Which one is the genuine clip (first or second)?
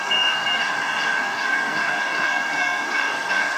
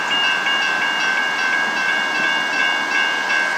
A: second